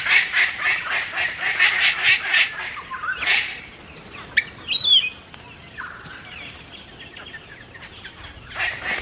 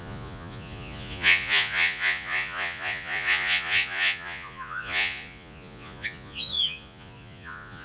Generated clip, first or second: second